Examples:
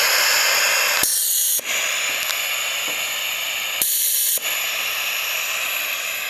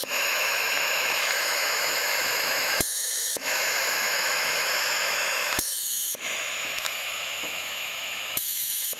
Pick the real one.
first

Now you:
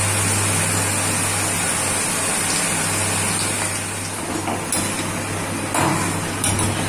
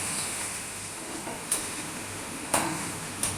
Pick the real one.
first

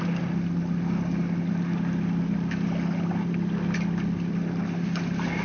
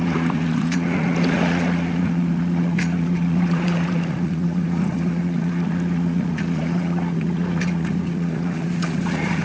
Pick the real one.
first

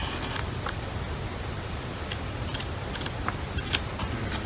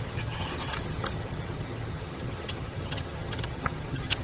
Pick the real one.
first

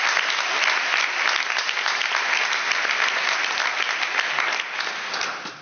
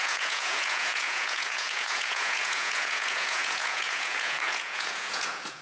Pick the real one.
first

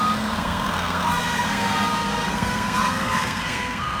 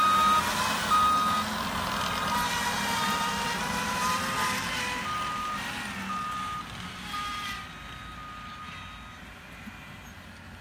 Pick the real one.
second